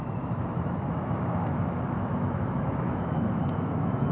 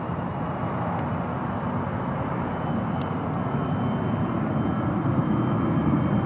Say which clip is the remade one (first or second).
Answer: first